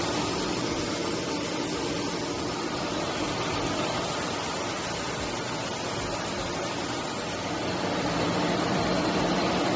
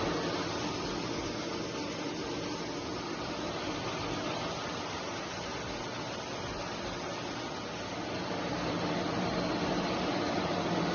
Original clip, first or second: second